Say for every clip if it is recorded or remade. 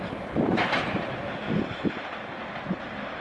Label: recorded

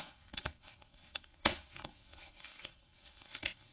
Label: remade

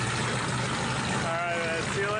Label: recorded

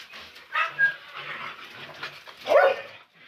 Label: recorded